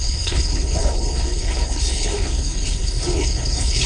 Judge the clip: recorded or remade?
remade